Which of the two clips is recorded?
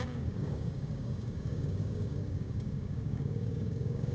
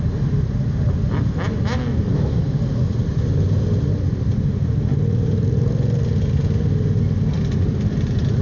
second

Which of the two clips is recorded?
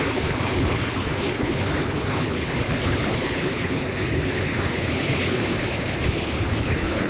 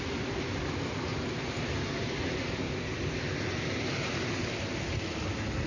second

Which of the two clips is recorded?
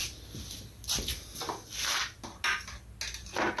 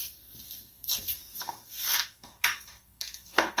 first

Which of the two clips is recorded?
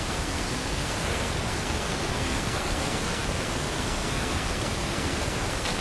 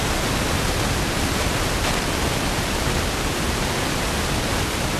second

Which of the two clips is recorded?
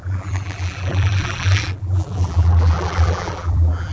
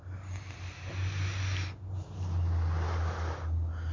second